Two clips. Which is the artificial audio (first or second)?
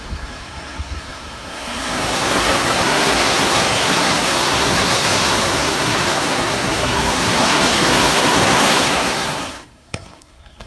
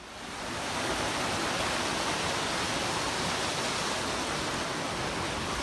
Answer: first